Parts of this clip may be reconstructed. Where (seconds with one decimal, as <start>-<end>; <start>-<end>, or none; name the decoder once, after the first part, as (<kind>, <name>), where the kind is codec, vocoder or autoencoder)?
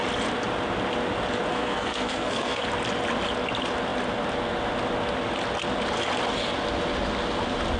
1.5-2.6 (codec, SNAC)